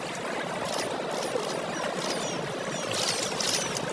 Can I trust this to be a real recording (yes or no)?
yes